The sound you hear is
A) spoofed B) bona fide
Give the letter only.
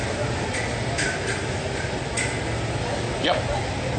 B